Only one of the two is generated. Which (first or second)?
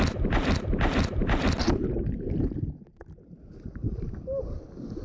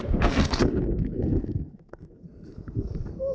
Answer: second